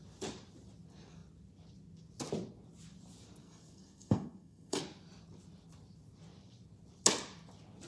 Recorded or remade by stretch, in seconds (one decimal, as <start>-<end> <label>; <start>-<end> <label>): 0.0-3.4 recorded; 3.4-4.8 remade; 4.8-7.9 recorded